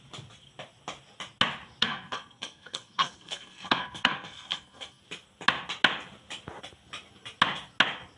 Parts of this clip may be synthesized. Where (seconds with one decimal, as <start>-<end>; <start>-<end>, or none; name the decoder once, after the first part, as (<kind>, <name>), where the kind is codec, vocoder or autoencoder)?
1.8-5.0 (codec, SNAC)